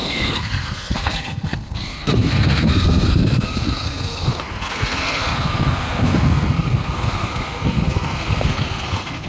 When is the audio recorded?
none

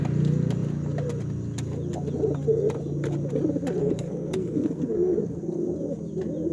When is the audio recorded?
0.0-3.8; 5.6-6.5

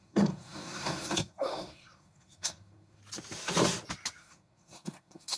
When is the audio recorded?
3.0-4.2

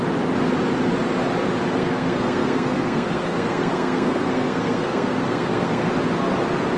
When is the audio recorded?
0.0-1.8; 5.9-6.8

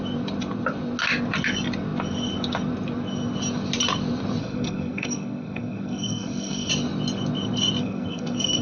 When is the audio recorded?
0.0-4.4; 6.7-7.8